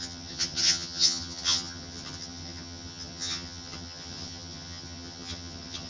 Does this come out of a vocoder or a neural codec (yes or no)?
yes